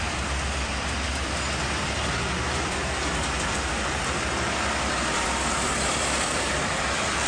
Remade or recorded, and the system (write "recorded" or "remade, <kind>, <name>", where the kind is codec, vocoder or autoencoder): remade, vocoder, BigVGAN v2